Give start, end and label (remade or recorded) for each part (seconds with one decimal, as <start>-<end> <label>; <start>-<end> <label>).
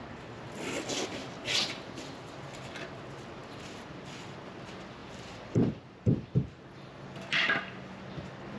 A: 0.0-5.0 recorded; 5.0-6.3 remade; 6.3-8.6 recorded